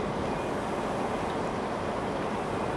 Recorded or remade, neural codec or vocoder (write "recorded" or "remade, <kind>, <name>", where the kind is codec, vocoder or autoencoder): recorded